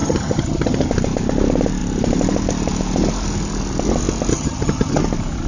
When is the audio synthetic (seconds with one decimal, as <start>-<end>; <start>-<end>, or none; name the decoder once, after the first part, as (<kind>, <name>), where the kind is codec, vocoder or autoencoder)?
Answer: 0.0-0.9 (vocoder, HiFi-GAN); 4.3-5.0